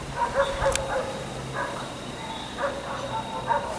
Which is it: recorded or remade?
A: recorded